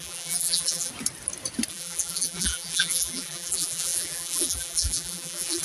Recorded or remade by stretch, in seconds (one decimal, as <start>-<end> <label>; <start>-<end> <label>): 0.0-0.9 remade; 0.9-1.7 recorded; 1.7-5.6 remade